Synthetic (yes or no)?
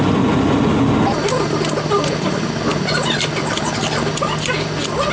no